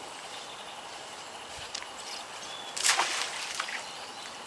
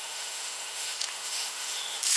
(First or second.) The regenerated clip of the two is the second